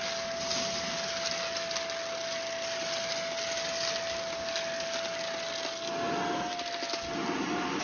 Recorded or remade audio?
recorded